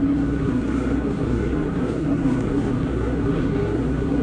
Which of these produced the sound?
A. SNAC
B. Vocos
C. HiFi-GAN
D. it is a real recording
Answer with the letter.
A